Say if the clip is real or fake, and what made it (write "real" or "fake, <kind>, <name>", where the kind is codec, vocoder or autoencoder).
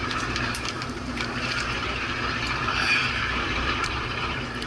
fake, vocoder, BigVGAN v2